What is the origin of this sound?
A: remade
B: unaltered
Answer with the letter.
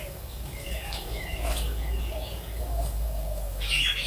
A